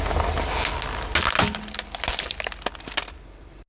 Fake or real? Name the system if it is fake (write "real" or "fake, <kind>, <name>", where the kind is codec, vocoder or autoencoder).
real